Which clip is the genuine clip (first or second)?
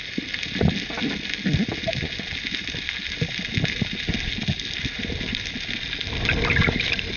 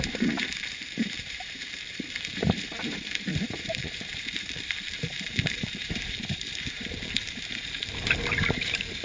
first